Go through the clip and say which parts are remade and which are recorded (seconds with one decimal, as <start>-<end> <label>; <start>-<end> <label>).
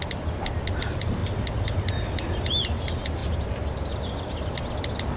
0.0-5.2 recorded